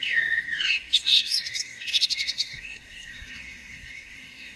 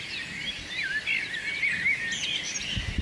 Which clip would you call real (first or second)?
second